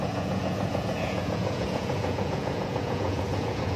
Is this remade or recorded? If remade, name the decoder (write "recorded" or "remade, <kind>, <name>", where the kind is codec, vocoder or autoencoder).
remade, vocoder, Vocos